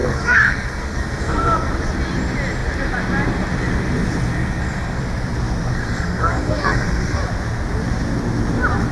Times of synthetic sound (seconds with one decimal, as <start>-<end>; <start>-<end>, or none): 0.0-1.7; 4.3-5.0; 5.7-7.2